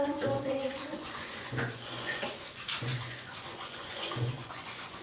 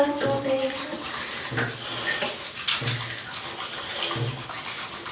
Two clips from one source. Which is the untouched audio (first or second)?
second